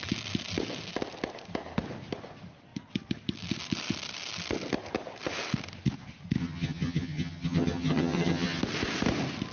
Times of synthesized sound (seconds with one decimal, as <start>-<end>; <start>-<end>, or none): 6.4-8.6